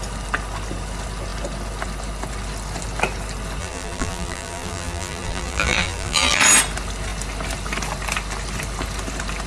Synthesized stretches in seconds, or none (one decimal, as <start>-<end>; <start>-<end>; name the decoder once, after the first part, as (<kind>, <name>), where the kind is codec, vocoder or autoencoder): 3.6-6.4 (vocoder, BigVGAN v2)